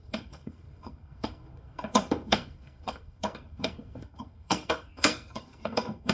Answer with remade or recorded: remade